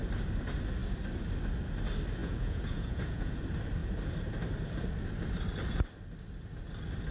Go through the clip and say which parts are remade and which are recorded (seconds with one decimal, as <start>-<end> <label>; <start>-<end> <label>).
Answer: 0.0-2.2 recorded; 2.2-3.4 remade; 3.4-7.1 recorded